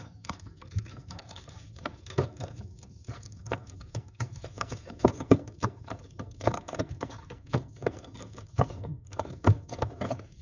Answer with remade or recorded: remade